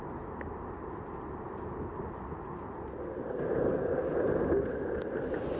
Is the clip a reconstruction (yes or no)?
no